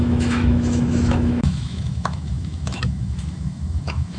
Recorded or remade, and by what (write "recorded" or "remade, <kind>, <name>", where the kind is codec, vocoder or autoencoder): remade, autoencoder, DAC-VAE